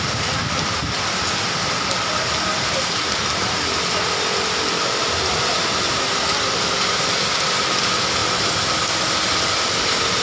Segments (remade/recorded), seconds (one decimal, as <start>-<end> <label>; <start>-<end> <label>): 0.0-0.8 remade; 0.8-4.8 recorded; 4.8-8.2 remade; 8.2-9.4 recorded; 9.4-10.2 remade